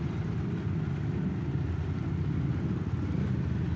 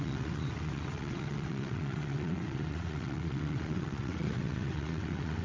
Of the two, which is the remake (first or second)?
second